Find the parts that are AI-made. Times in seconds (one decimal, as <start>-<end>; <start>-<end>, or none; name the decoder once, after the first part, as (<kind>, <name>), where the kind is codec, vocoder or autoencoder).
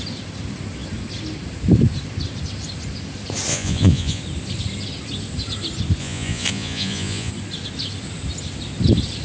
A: 3.5-4.2 (vocoder, Vocos); 6.0-7.3